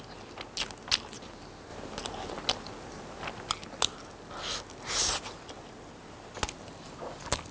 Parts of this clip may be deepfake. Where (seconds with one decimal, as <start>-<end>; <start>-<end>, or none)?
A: none